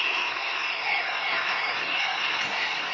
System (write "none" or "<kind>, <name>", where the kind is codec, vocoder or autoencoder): codec, SNAC